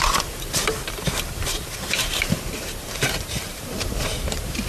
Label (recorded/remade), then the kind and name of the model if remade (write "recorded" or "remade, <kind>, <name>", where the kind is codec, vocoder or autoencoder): remade, vocoder, BigVGAN v2